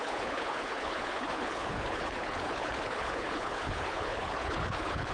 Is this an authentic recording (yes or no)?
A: no